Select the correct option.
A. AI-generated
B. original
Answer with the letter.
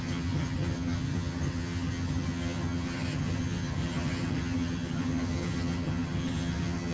A